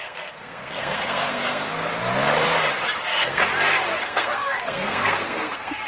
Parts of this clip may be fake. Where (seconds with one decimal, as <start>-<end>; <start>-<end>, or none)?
0.0-1.9; 3.0-3.4; 4.0-5.9